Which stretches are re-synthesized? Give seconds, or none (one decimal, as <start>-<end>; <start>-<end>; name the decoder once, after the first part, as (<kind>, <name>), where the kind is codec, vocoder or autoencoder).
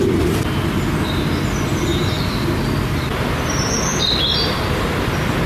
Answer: 3.9-5.1 (vocoder, BigVGAN v2)